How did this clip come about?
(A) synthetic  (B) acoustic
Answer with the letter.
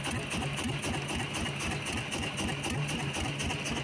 B